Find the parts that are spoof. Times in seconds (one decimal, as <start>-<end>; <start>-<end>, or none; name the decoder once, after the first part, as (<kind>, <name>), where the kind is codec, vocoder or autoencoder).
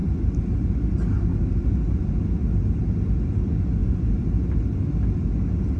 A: 1.3-2.0 (vocoder, BigVGAN v2); 3.8-4.5